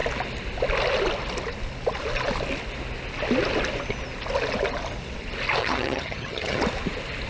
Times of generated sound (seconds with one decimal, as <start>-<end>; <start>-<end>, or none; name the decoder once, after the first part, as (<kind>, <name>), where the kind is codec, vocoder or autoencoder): 5.6-6.6 (vocoder, HiFi-GAN)